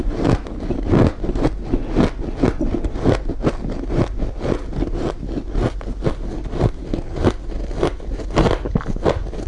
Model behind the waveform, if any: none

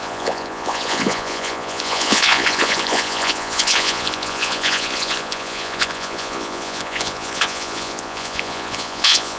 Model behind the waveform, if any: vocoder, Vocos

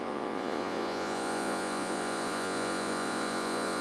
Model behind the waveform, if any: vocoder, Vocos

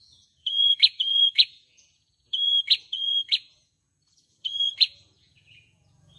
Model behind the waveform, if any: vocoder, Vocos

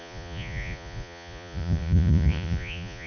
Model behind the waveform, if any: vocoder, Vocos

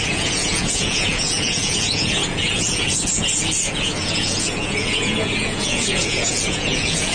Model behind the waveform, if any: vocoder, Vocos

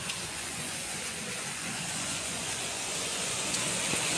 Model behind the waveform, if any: vocoder, Vocos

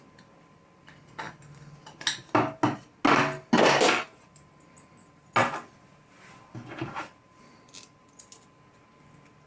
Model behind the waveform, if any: none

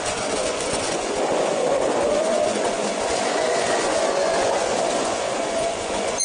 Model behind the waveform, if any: vocoder, Vocos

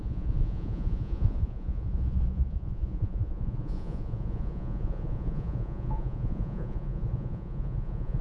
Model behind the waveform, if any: vocoder, Vocos